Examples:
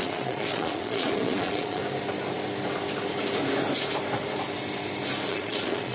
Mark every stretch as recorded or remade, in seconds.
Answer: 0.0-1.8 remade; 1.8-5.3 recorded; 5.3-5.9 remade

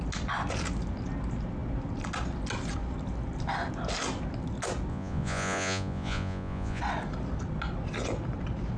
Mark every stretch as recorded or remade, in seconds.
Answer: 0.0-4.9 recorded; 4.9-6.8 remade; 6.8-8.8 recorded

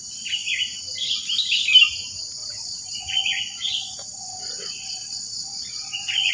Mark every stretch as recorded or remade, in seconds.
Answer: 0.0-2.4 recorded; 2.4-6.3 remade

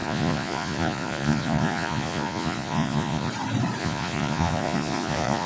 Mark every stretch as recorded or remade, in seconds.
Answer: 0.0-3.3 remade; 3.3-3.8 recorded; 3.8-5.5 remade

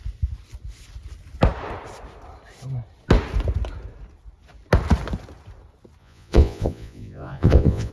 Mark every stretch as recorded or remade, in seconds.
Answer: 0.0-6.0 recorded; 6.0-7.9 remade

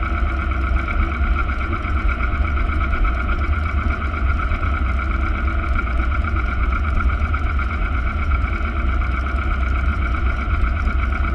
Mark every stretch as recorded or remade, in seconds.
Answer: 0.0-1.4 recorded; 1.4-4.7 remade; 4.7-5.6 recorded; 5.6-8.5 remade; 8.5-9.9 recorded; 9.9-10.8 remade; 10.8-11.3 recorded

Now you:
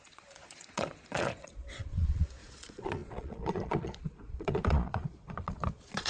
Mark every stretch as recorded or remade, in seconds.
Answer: 0.0-6.1 remade

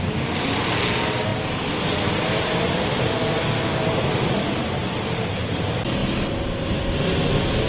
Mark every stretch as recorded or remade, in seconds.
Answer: 0.0-7.7 recorded